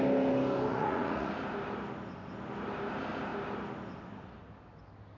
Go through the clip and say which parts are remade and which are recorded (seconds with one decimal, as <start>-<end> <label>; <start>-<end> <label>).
0.0-0.7 recorded; 0.7-1.3 remade; 1.3-5.2 recorded